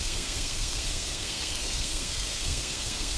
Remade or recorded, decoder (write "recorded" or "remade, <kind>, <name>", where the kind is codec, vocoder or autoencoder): remade, codec, SNAC